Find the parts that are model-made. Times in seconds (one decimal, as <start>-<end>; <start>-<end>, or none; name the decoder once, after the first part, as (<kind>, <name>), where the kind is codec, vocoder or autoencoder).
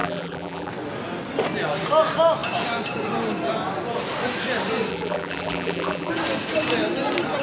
0.0-0.7 (vocoder, BigVGAN v2); 4.9-6.1